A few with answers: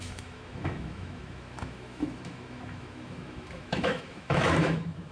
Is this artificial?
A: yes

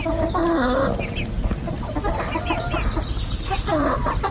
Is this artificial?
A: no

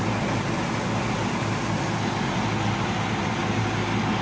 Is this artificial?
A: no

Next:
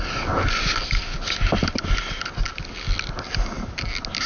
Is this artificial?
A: no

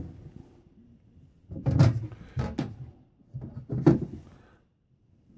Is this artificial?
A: no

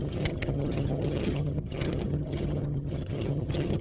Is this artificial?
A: yes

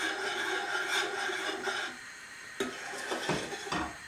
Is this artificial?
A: yes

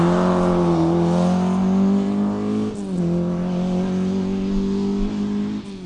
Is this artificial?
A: no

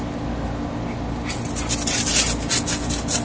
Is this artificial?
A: no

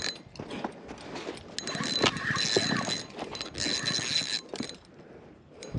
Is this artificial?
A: no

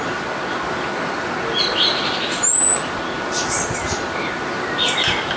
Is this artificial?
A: no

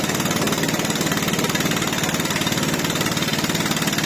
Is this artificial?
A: no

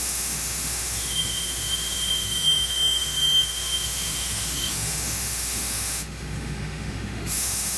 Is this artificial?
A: yes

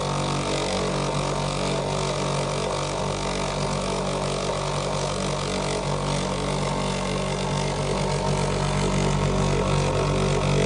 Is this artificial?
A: no